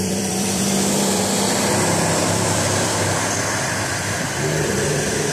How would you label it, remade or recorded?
remade